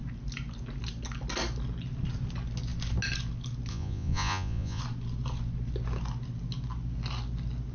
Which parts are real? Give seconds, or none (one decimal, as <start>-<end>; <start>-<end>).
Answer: 0.0-3.7; 4.8-7.7